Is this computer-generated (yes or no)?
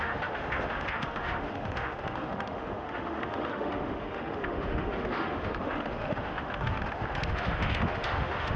yes